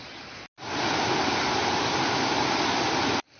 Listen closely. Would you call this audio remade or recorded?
recorded